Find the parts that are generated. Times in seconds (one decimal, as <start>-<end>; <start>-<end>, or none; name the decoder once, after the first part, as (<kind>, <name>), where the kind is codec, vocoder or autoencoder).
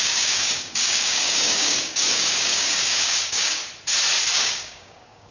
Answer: 0.0-3.6 (codec, DAC); 4.3-5.3